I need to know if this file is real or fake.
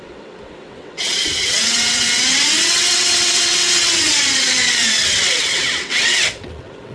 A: fake